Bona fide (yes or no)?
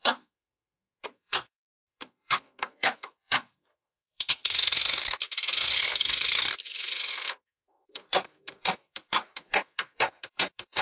no